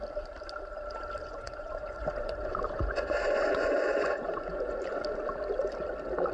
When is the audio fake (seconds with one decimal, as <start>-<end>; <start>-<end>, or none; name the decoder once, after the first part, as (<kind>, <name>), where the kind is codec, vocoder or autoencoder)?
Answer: 1.2-5.0 (vocoder, Vocos)